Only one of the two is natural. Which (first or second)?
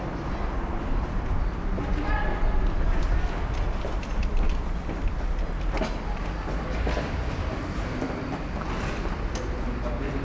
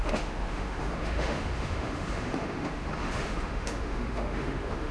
first